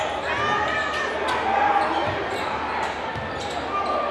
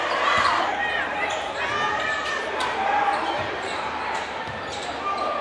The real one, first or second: first